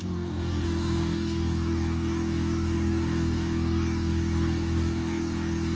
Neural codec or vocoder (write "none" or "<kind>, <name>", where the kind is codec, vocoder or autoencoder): codec, DAC